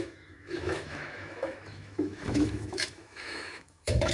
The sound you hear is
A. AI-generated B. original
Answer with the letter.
A